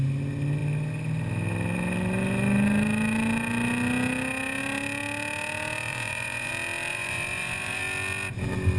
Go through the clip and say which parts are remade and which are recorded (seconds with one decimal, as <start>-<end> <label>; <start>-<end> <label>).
0.0-5.9 recorded; 5.9-6.5 remade; 6.5-6.9 recorded; 6.9-7.8 remade; 7.8-8.8 recorded